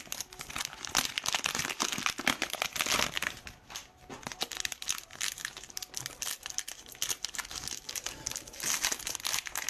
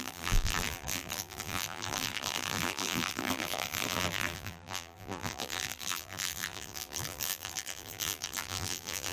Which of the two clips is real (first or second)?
first